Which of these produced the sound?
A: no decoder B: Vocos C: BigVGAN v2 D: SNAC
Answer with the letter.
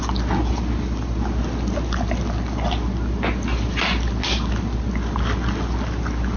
A